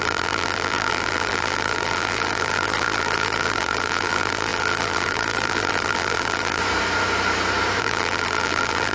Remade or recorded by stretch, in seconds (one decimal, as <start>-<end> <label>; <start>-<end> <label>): 0.0-6.6 remade; 6.6-7.8 recorded; 7.8-8.9 remade